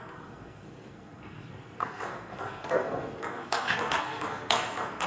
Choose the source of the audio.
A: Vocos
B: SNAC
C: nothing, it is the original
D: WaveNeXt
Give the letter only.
B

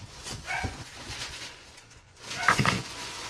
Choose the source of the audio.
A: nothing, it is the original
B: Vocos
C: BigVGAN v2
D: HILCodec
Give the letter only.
B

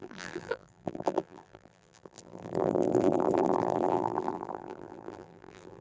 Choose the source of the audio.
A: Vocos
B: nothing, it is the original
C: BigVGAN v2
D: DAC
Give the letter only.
C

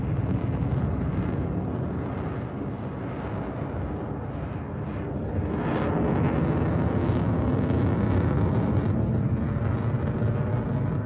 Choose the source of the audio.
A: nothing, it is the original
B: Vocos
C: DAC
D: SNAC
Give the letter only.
A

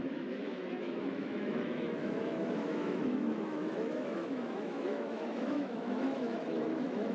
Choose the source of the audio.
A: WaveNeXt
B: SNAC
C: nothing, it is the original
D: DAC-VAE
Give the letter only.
D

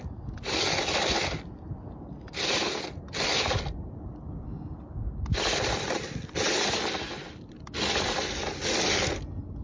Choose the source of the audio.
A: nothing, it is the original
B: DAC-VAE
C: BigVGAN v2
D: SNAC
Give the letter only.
A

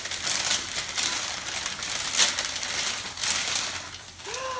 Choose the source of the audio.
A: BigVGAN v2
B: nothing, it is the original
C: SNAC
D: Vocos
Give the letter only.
B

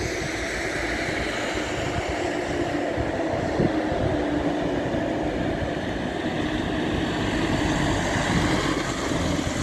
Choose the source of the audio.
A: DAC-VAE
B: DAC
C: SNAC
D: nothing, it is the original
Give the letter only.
D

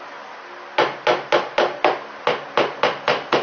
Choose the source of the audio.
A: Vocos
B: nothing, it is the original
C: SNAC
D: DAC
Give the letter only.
B